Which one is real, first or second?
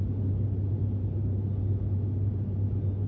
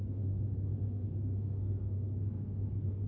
first